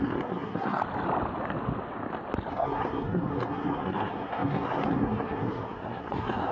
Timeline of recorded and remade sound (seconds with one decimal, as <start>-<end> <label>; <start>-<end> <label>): 0.0-0.8 remade; 0.8-2.5 recorded; 2.5-6.5 remade